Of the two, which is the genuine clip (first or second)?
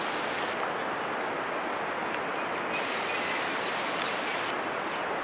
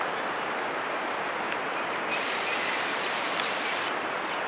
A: first